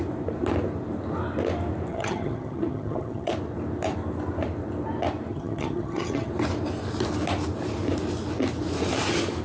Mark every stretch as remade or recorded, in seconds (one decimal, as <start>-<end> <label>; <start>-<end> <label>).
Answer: 0.0-1.9 recorded; 1.9-3.3 remade; 3.3-5.3 recorded; 5.3-6.3 remade; 6.3-9.4 recorded